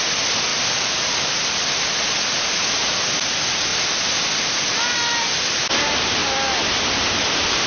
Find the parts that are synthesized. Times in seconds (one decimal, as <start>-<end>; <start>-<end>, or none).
0.5-1.8; 3.7-4.6; 6.2-7.7